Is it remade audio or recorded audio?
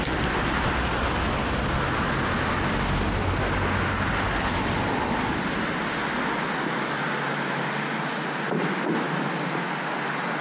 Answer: recorded